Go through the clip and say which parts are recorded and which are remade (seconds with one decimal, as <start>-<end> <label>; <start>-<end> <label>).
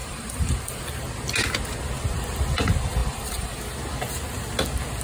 0.0-0.8 remade; 0.8-3.0 recorded; 3.0-3.6 remade; 3.6-5.0 recorded